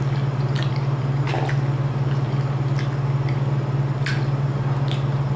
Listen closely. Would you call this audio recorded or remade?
recorded